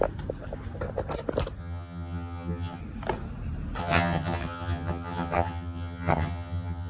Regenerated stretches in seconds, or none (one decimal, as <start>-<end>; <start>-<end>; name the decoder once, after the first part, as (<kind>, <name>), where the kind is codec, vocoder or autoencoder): 1.6-2.8 (vocoder, HiFi-GAN); 3.8-6.9